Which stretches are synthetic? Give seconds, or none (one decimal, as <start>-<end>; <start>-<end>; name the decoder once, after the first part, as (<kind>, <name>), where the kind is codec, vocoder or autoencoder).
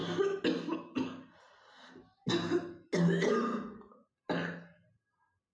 none